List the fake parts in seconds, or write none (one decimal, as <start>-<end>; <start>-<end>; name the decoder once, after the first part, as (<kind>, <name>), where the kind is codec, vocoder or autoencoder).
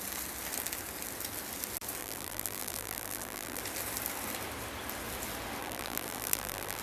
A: 2.0-3.6 (vocoder, BigVGAN v2); 5.6-6.8